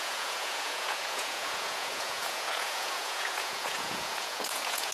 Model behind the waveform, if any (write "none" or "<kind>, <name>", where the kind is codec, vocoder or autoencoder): vocoder, Vocos